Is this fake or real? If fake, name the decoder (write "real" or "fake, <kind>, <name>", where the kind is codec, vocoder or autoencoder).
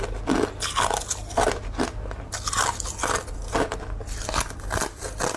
real